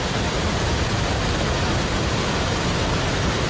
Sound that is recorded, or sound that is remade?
recorded